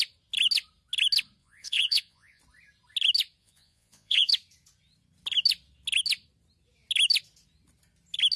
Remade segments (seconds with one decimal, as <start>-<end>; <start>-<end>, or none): 1.4-2.4; 3.4-4.3